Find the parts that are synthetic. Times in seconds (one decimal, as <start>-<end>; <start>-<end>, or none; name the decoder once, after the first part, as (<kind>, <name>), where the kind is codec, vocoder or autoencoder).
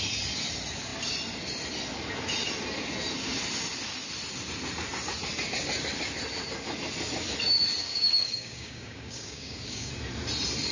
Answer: 7.8-9.9 (codec, DAC)